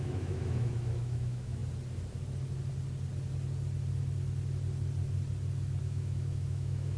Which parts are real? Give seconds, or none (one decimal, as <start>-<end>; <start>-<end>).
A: 1.6-5.8